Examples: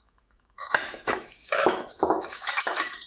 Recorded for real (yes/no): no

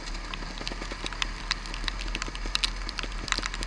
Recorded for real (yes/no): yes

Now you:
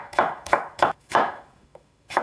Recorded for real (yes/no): no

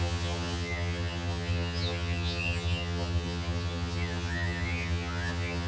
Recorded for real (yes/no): no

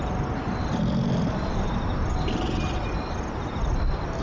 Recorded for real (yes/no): yes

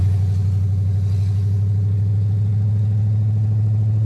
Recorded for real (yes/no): yes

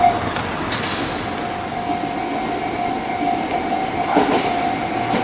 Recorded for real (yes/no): yes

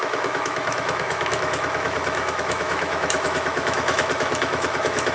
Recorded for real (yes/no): no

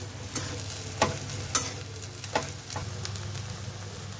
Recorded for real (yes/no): yes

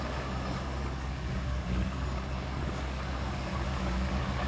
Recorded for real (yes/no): no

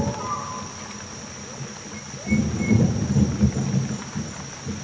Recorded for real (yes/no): yes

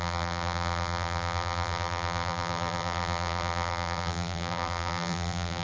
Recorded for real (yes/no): no